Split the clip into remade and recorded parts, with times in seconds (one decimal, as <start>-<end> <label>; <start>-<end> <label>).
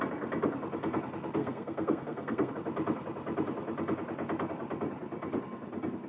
0.0-1.4 recorded; 1.4-2.5 remade; 2.5-6.1 recorded